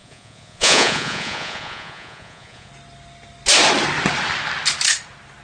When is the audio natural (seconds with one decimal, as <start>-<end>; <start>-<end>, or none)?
2.7-5.4